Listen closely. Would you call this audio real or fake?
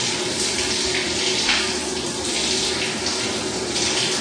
real